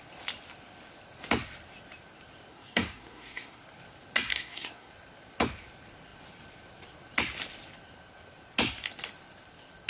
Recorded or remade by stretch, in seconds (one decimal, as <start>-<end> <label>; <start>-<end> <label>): 0.0-2.5 recorded; 2.5-3.6 remade; 3.6-4.3 recorded; 4.3-4.9 remade; 4.9-9.9 recorded